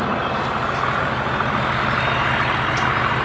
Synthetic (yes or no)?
no